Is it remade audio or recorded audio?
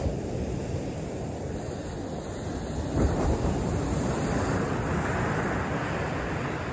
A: recorded